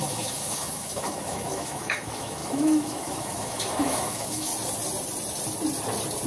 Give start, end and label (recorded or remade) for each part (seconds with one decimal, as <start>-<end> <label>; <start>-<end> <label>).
0.0-4.5 remade; 4.5-6.3 recorded